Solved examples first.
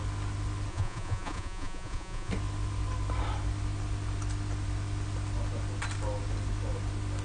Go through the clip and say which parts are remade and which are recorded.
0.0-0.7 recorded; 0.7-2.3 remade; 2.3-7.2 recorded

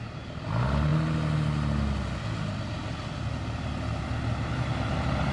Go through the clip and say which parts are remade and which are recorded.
0.0-5.3 recorded

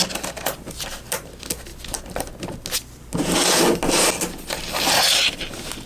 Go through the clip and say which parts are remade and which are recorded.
0.0-1.7 recorded; 1.7-2.3 remade; 2.3-5.9 recorded

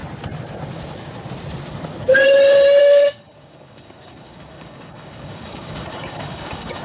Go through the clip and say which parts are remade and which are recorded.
0.0-2.8 recorded; 2.8-6.8 remade